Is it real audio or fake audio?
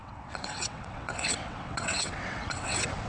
fake